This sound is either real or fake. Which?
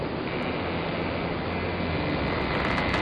real